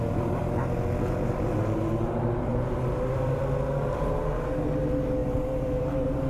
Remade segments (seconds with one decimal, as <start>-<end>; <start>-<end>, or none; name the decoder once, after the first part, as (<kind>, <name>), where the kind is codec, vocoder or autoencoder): 2.5-3.4 (vocoder, BigVGAN v2); 5.2-6.3